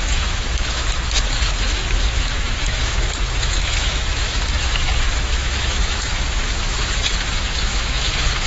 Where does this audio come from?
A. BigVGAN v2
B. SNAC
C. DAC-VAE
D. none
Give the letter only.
C